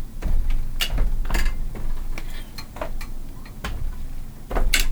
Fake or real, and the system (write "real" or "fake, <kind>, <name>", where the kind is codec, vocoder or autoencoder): real